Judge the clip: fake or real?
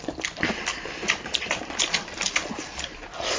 fake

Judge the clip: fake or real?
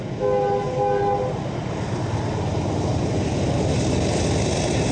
real